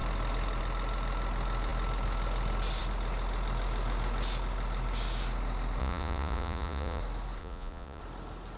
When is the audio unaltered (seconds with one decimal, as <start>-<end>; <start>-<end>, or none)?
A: 0.0-5.8; 7.0-7.4; 8.0-8.6